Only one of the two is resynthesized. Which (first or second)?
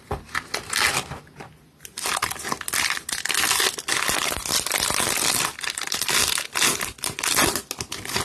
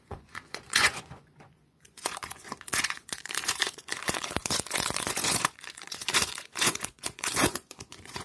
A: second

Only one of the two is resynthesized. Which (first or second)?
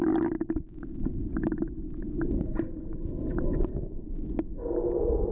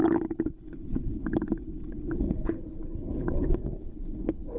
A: second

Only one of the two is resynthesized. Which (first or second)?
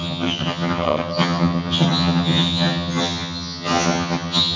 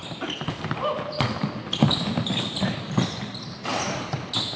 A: first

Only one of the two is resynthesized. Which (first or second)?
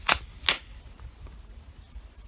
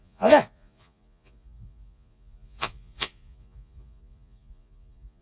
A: second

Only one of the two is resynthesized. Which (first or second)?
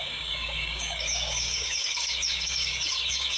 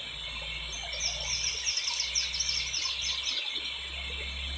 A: first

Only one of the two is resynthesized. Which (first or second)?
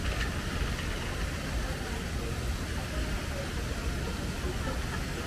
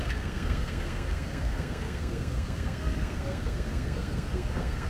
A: second